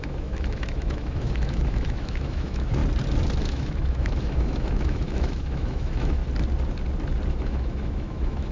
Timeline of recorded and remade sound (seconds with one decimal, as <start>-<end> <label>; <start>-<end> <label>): 0.0-2.8 remade; 2.8-3.4 recorded; 3.4-6.2 remade; 6.2-7.3 recorded; 7.3-8.5 remade